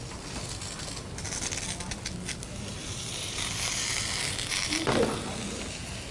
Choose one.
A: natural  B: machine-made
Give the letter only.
A